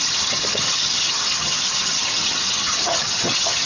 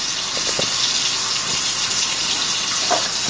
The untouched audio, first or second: second